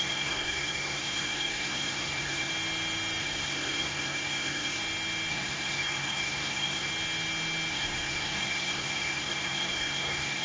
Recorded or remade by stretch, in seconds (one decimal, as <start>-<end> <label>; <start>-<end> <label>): 0.0-2.5 remade; 2.5-3.2 recorded; 3.2-4.8 remade; 4.8-5.3 recorded; 5.3-6.9 remade; 6.9-7.7 recorded; 7.7-10.4 remade